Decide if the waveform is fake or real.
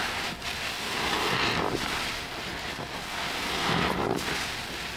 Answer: real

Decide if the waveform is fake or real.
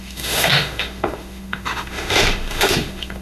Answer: fake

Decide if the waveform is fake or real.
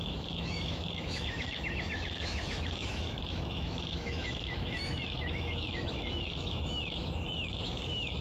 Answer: fake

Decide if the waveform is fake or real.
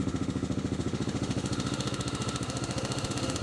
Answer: fake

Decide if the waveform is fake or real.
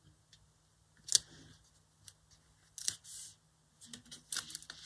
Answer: real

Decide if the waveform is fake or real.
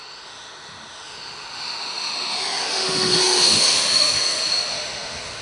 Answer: fake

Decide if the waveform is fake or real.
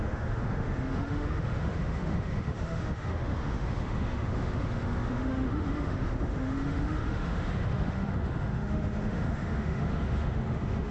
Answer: fake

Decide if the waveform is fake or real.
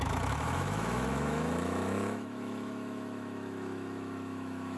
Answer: fake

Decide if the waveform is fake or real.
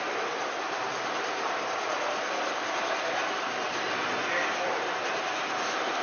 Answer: real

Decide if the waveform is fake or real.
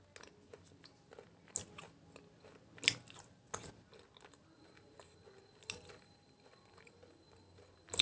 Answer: real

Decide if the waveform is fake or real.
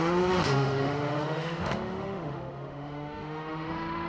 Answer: fake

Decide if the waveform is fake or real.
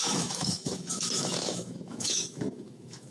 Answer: fake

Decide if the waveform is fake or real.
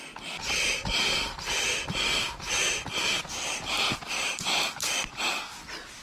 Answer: real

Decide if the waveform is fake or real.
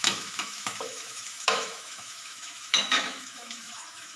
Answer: fake